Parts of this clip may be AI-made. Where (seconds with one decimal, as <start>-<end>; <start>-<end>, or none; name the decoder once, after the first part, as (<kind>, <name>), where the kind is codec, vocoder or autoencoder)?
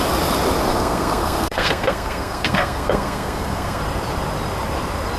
0.7-3.8 (codec, SNAC)